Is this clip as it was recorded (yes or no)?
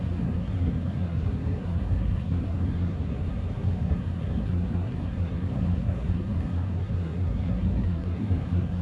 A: no